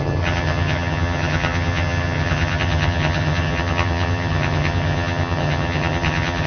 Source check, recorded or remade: remade